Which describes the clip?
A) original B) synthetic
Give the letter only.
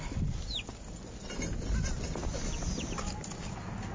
A